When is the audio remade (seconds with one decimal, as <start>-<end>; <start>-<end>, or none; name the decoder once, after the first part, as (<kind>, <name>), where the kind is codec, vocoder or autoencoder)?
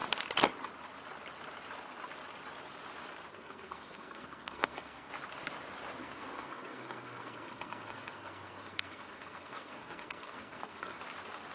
3.3-5.1 (codec, SNAC); 6.0-11.0